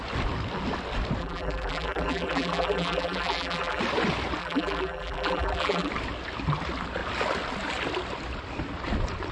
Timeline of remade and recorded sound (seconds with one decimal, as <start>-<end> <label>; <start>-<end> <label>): 0.0-1.2 recorded; 1.2-3.8 remade; 3.8-4.4 recorded; 4.4-5.9 remade; 5.9-9.3 recorded